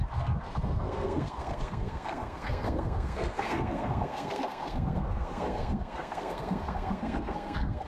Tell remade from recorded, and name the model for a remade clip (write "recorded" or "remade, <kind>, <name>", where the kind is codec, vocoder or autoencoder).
remade, codec, SNAC